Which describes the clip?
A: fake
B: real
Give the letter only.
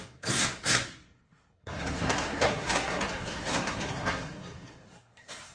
A